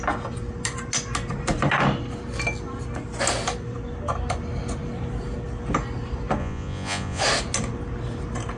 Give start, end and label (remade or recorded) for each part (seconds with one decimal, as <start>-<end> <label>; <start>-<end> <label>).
0.0-6.4 recorded; 6.4-7.2 remade; 7.2-8.6 recorded